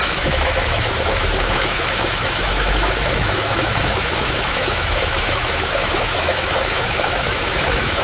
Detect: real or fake fake